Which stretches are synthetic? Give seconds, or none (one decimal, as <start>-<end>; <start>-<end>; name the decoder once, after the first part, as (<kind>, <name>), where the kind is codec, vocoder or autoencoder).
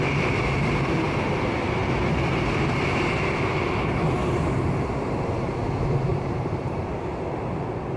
6.1-6.8 (vocoder, BigVGAN v2)